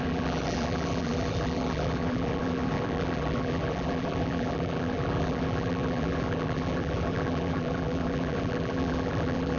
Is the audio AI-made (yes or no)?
yes